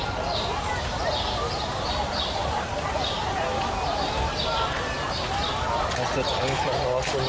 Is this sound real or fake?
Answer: real